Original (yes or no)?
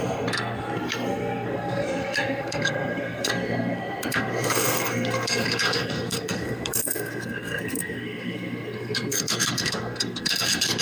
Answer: no